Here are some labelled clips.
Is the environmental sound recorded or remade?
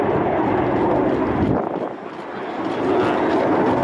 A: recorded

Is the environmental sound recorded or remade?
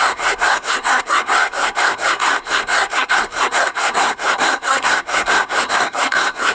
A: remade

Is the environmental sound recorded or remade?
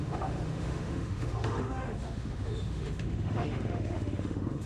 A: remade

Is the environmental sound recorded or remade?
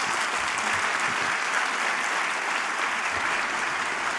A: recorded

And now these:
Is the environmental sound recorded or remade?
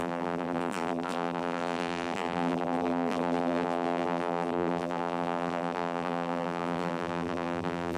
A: remade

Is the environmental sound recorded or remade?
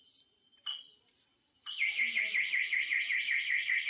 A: recorded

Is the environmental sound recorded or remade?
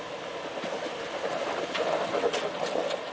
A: recorded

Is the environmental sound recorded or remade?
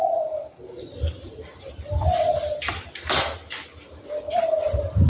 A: remade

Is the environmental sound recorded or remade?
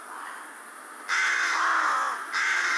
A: recorded